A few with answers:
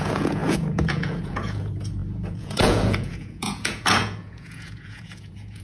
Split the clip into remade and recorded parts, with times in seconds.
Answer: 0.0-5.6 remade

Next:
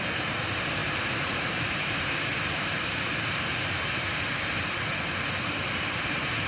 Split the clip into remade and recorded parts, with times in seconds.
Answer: 0.0-6.5 remade

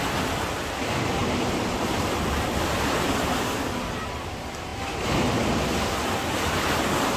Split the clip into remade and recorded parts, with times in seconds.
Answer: 0.0-7.2 recorded

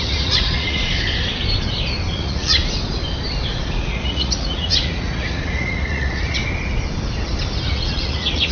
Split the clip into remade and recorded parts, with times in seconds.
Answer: 0.0-0.9 remade; 0.9-2.1 recorded; 2.1-2.6 remade; 2.6-3.8 recorded; 3.8-6.4 remade; 6.4-7.7 recorded; 7.7-8.5 remade

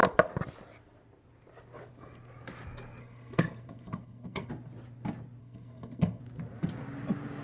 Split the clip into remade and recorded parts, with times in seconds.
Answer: 0.0-3.0 recorded; 3.0-4.5 remade; 4.5-5.4 recorded; 5.4-6.2 remade; 6.2-7.4 recorded

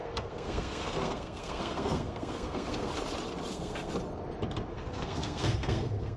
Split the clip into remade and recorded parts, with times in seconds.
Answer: 0.0-2.9 remade; 2.9-3.5 recorded; 3.5-3.9 remade; 3.9-4.7 recorded; 4.7-6.2 remade

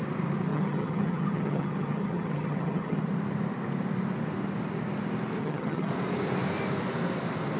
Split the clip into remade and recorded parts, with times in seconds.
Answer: 0.0-0.5 recorded; 0.5-3.0 remade; 3.0-5.4 recorded; 5.4-5.9 remade; 5.9-7.6 recorded

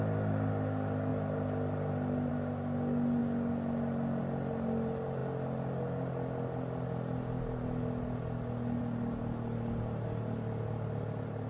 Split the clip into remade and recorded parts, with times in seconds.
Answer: 0.0-11.5 recorded